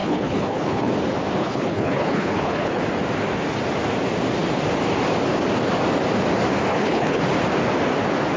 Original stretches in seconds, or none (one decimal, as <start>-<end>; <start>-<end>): 0.9-1.4; 2.8-6.7; 7.2-8.4